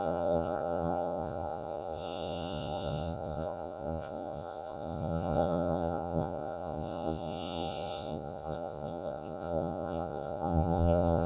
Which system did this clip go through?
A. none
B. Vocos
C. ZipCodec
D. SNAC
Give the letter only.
B